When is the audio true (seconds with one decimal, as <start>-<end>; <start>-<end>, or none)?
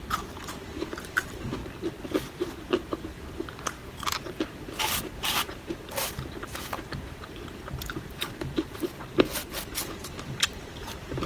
1.6-2.2; 9.4-10.0